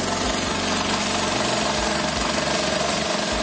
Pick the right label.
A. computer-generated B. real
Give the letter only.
B